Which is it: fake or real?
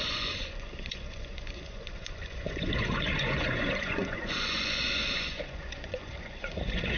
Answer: fake